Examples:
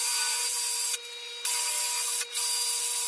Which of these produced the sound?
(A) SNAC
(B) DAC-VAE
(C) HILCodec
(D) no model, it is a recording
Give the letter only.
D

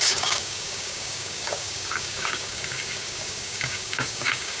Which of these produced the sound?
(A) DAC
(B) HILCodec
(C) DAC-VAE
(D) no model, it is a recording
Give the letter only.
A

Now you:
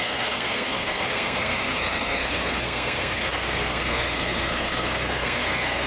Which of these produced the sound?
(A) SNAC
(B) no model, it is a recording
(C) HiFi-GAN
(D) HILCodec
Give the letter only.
A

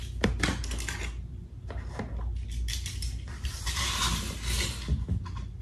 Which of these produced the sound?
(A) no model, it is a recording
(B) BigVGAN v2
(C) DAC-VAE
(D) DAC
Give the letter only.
A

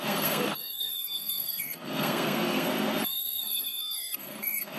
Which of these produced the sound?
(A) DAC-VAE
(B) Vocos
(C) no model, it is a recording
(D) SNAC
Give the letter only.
D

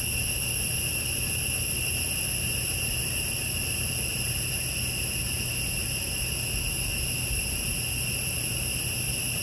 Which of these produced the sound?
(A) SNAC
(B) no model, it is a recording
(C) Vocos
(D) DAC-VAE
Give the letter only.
B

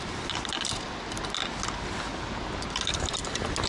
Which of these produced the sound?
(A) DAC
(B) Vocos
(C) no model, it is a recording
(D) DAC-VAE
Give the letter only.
C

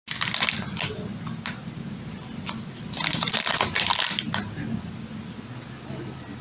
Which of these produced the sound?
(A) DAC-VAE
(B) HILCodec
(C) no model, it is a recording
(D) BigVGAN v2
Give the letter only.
C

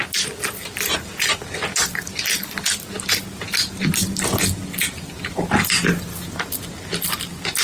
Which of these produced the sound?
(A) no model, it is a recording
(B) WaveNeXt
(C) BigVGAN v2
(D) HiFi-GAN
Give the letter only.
A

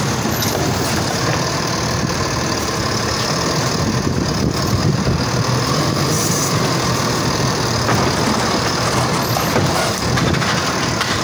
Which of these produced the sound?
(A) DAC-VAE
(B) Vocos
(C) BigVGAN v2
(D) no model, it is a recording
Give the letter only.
C